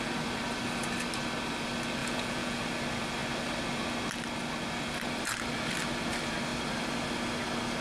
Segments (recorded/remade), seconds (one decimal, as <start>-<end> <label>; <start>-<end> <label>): 0.0-2.0 recorded; 2.0-2.6 remade; 2.6-7.8 recorded